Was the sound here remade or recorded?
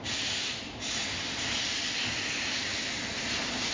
remade